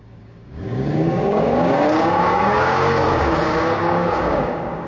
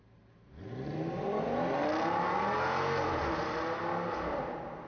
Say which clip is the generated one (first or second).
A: first